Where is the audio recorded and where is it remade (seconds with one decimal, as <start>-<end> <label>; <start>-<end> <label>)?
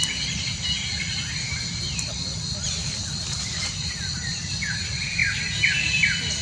0.0-6.4 recorded